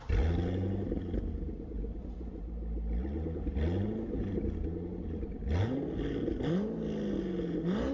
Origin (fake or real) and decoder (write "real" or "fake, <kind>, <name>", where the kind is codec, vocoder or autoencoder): real